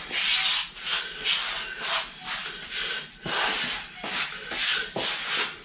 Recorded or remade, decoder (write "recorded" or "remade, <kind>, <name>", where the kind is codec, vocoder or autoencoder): recorded